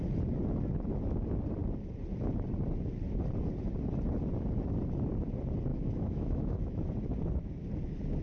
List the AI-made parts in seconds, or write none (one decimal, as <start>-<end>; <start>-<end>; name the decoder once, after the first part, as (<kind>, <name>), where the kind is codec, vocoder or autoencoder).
5.7-6.9 (autoencoder, DAC-VAE)